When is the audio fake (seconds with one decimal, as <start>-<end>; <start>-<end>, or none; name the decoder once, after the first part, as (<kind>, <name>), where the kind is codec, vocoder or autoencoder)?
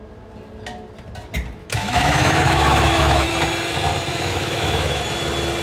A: 1.6-3.3 (autoencoder, DAC-VAE); 4.1-5.0